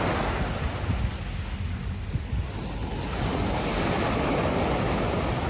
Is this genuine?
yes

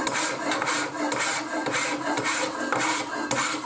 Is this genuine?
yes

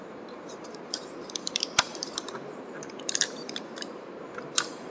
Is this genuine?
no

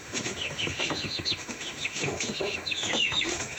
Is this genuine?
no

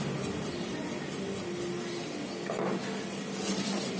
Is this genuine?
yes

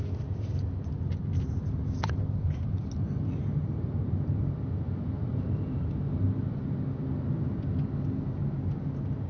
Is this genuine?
yes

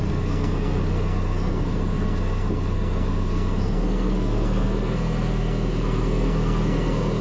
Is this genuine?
no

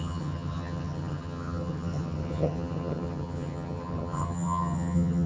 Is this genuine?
no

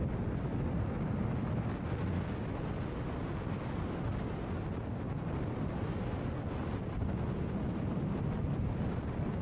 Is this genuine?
yes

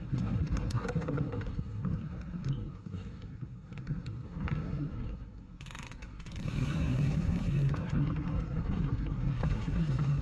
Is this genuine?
no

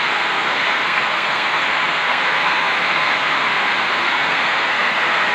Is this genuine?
no